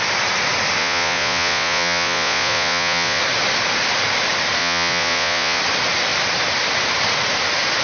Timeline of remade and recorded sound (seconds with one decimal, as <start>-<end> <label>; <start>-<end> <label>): 0.0-0.8 recorded; 0.8-3.2 remade; 3.2-4.6 recorded; 4.6-5.6 remade; 5.6-7.8 recorded